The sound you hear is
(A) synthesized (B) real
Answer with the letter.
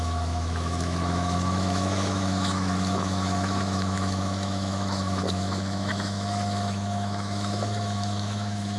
A